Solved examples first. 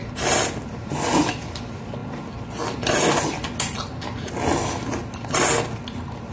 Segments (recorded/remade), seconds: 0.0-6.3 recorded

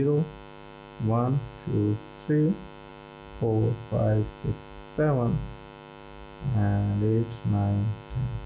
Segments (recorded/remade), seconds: 0.0-8.5 recorded